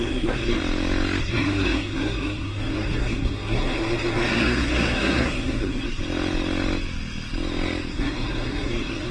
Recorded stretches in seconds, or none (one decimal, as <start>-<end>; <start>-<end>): 0.6-1.2; 6.0-7.9